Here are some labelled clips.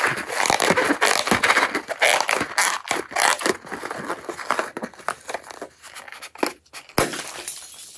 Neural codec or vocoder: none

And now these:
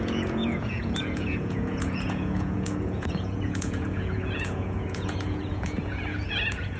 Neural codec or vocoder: vocoder, Vocos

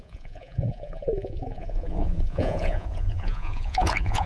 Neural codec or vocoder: vocoder, Vocos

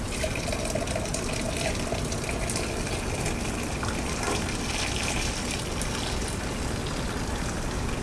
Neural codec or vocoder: none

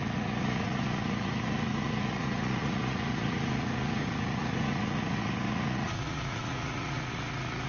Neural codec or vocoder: vocoder, Vocos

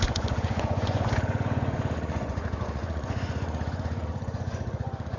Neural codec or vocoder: vocoder, Vocos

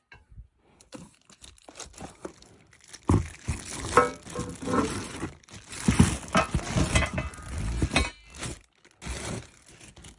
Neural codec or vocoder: none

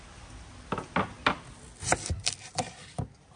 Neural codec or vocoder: none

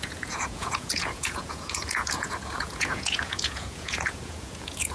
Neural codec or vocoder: vocoder, Vocos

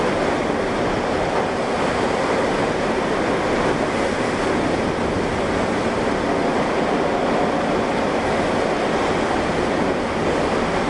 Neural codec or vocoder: none